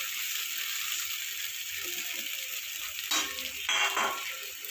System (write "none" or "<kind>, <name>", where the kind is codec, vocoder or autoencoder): none